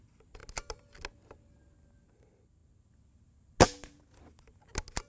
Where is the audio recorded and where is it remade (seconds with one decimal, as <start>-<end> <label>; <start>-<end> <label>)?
0.0-5.1 recorded